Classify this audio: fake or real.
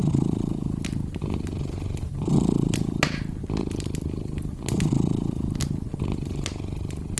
real